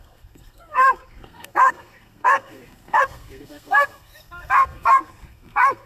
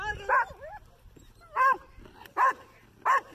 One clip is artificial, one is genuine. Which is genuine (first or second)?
second